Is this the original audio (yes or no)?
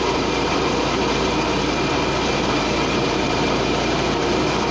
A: no